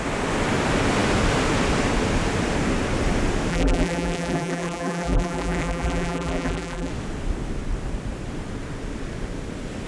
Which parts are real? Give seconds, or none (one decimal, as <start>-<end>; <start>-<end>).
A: 0.0-3.5; 6.9-9.9

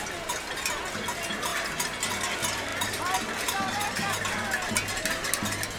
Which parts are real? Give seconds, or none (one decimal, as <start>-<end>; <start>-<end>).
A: 0.0-2.7; 4.7-5.8

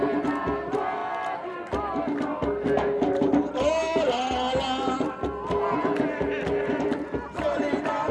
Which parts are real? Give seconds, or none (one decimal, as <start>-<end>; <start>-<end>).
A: 1.0-3.2; 3.8-6.8

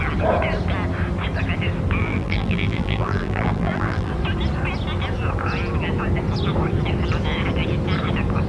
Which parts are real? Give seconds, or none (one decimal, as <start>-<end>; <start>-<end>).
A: 0.0-2.0; 4.1-8.5

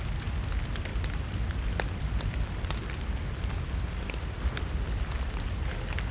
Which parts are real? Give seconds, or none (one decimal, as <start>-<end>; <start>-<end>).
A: 0.0-0.9; 4.4-6.1

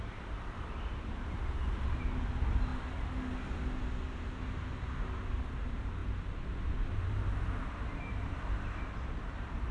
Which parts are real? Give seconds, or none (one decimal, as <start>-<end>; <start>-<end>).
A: 0.0-6.0

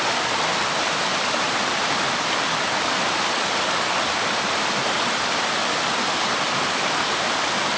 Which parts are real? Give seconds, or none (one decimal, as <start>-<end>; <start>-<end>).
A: 0.0-5.6; 7.1-7.8